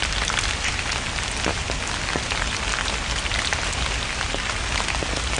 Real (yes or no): yes